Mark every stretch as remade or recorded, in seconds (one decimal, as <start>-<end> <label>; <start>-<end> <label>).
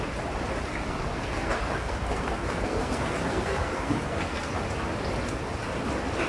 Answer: 0.0-0.7 recorded; 0.7-4.5 remade; 4.5-6.3 recorded